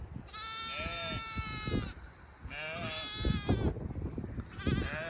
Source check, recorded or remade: recorded